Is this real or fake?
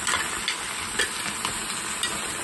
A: real